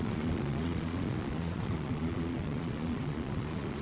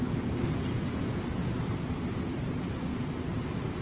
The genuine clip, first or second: second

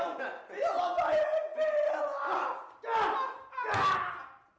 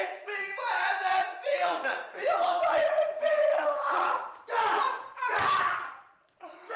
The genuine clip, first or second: first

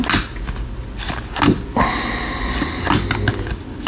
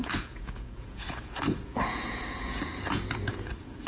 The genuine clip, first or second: first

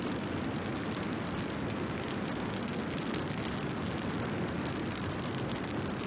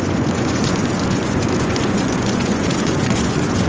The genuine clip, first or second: first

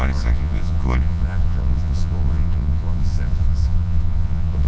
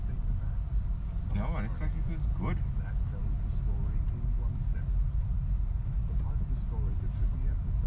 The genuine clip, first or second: second